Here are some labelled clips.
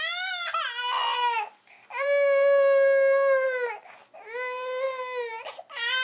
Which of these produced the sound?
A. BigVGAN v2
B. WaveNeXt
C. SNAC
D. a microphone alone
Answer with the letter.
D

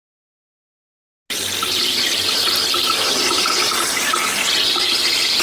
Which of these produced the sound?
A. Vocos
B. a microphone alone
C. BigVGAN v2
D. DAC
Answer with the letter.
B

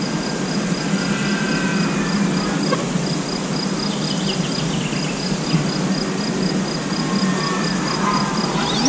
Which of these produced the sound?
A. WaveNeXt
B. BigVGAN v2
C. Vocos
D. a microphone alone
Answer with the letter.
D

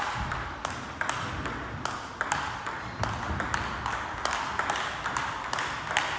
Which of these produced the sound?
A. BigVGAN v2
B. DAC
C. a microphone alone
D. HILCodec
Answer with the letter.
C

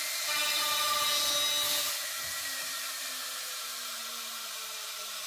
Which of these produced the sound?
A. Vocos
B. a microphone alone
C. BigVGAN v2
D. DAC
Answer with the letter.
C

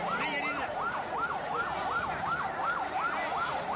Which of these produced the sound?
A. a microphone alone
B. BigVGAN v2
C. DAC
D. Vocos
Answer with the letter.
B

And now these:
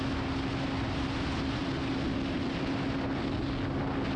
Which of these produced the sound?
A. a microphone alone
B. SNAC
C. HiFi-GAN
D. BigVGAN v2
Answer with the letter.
A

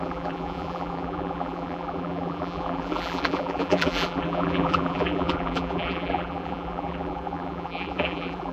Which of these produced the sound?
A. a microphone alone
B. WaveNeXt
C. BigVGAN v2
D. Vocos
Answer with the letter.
C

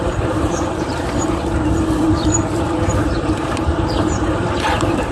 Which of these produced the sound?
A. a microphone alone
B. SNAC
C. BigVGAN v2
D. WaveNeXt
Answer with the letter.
C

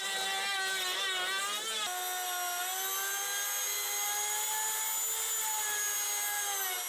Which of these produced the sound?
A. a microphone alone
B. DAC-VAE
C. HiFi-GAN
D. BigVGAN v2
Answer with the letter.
A